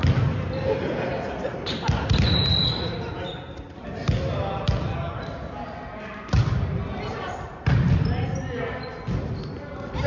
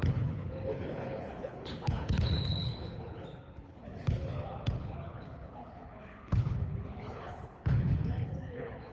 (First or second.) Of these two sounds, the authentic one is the first